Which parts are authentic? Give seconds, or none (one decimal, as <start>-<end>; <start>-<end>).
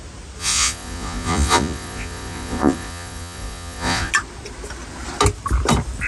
0.0-0.4; 4.1-6.1